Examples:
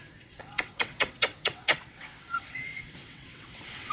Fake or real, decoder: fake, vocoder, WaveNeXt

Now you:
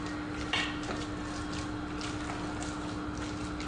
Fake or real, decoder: real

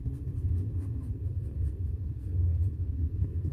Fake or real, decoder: fake, codec, SNAC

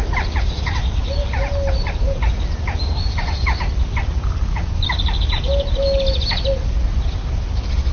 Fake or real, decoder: real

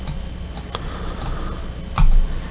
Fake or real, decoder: real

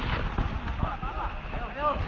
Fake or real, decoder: real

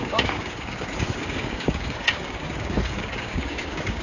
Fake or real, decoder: fake, codec, DAC